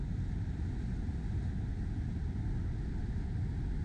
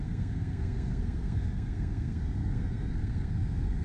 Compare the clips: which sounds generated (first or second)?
second